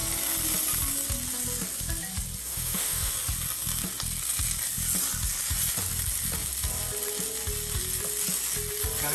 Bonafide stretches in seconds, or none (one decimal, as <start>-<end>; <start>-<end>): 0.0-2.4; 3.1-9.1